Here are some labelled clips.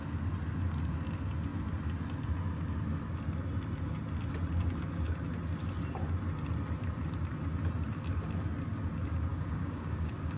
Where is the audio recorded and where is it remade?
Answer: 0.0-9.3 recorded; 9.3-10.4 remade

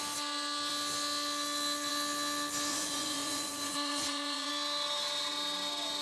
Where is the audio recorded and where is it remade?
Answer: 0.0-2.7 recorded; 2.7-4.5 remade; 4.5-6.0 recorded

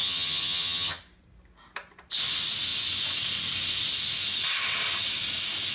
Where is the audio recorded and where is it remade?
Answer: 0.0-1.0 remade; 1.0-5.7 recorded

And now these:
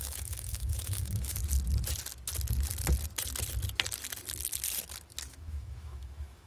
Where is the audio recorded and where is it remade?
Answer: 0.0-1.4 remade; 1.4-5.3 recorded; 5.3-6.5 remade

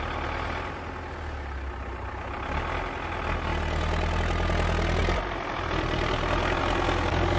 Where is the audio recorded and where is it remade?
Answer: 0.0-5.0 recorded; 5.0-6.6 remade; 6.6-7.4 recorded

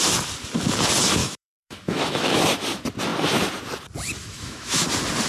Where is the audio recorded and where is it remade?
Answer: 0.0-1.2 recorded; 1.2-2.4 remade; 2.4-4.2 recorded; 4.2-4.8 remade; 4.8-5.3 recorded